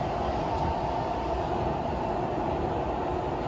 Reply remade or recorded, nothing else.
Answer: recorded